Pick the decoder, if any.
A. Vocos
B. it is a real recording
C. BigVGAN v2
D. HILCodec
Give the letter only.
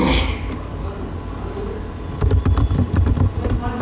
B